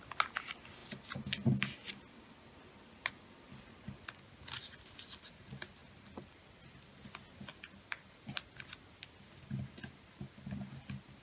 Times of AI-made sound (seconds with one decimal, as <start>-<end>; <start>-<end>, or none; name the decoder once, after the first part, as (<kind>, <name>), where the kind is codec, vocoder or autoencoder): none